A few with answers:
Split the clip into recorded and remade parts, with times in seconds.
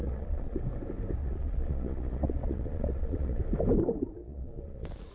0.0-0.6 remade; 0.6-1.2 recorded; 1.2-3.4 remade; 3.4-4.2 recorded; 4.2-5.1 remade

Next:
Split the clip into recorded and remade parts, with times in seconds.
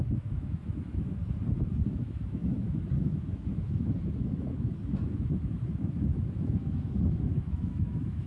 0.0-1.2 remade; 1.2-1.7 recorded; 1.7-8.3 remade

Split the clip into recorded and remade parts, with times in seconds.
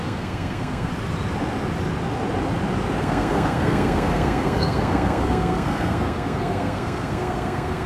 0.0-0.9 remade; 0.9-3.0 recorded; 3.0-7.9 remade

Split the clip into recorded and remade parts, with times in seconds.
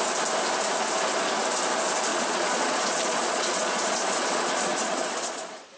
0.0-2.1 recorded; 2.1-5.8 remade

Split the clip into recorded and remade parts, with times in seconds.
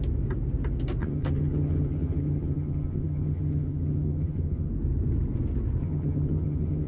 0.0-1.0 recorded; 1.0-4.7 remade; 4.7-5.8 recorded; 5.8-6.9 remade